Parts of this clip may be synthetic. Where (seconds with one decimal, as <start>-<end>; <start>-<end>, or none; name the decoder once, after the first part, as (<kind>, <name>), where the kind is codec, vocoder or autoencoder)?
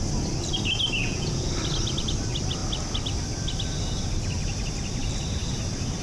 1.0-1.5 (vocoder, Vocos)